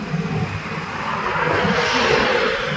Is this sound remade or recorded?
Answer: recorded